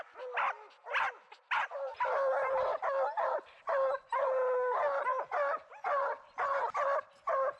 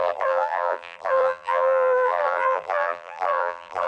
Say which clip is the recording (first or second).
first